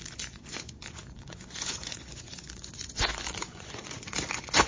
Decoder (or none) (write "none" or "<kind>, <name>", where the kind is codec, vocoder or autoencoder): vocoder, Vocos